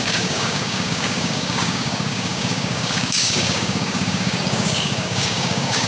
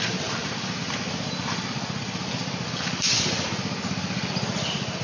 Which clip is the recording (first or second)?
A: second